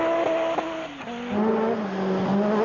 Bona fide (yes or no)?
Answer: yes